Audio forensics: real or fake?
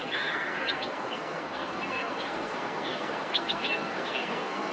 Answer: fake